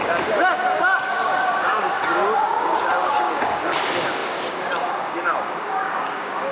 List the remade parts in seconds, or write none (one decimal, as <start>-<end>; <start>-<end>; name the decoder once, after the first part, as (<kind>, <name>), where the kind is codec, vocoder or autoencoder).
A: 0.0-6.5 (codec, DAC)